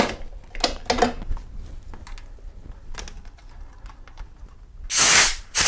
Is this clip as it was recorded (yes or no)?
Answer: yes